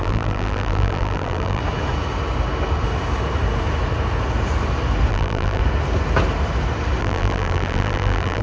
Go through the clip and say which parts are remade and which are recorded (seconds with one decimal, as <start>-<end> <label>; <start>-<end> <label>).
0.0-1.6 remade; 1.6-5.1 recorded; 5.1-5.6 remade; 5.6-7.0 recorded; 7.0-8.4 remade